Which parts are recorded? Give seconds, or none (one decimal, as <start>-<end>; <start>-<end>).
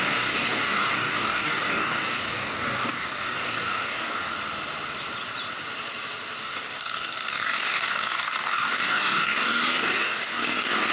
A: 4.3-6.4